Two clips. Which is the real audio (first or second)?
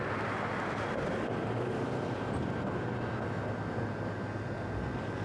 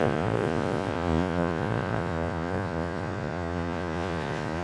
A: first